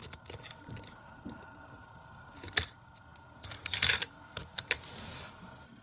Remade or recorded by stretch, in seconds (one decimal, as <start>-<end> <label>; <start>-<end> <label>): 0.0-3.1 remade; 3.1-3.8 recorded; 3.8-5.8 remade